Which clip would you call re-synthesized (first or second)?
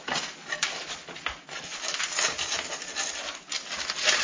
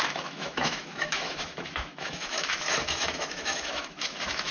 second